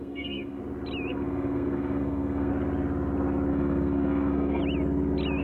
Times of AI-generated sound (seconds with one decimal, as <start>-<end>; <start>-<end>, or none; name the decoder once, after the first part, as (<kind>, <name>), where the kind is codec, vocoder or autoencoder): 0.0-0.6 (codec, SNAC); 1.1-2.5; 3.5-4.6